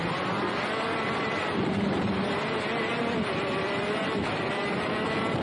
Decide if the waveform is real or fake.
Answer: fake